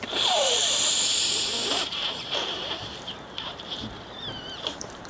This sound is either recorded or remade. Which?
remade